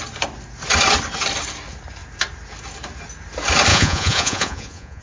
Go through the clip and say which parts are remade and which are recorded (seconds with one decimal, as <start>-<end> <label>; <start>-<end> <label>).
0.0-3.7 recorded; 3.7-5.0 remade

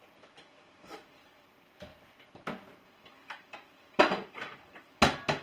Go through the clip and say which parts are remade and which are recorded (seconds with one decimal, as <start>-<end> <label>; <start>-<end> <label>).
0.0-5.4 recorded